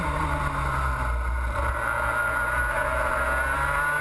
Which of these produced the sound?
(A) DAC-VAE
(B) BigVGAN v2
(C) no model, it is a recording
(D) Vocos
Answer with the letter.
C